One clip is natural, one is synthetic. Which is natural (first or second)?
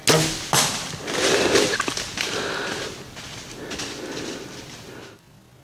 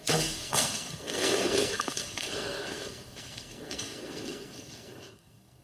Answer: first